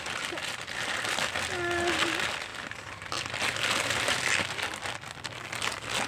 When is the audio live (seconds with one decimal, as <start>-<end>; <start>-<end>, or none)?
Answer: 0.0-6.1